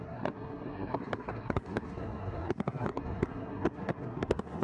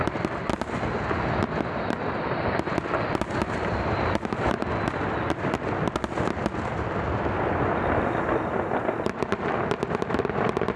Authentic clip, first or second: second